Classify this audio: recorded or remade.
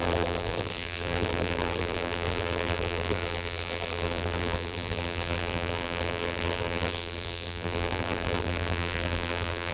remade